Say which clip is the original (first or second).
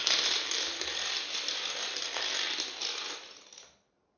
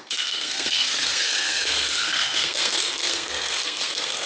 first